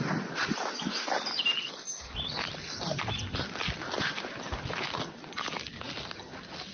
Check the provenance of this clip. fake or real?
real